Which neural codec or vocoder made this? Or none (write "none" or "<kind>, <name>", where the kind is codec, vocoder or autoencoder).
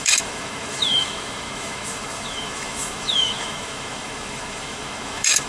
autoencoder, DAC-VAE